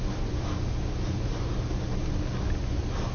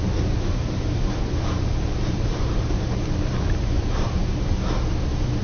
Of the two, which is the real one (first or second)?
first